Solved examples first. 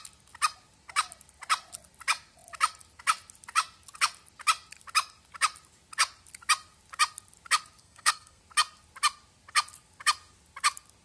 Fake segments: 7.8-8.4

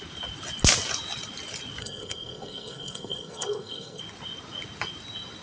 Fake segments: 1.8-4.0

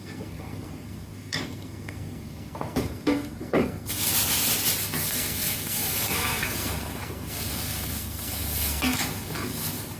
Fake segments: 0.0-4.1; 4.8-10.0